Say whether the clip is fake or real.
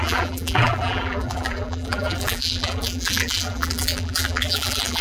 fake